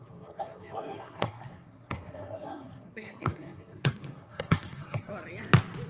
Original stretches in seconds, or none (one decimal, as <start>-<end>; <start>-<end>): 5.1-5.9